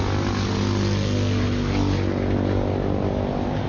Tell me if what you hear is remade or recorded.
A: recorded